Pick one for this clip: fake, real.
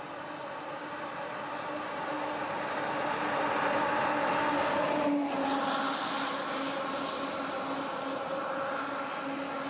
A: real